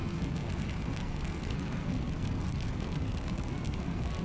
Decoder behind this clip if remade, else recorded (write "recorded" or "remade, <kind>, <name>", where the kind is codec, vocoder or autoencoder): remade, codec, SNAC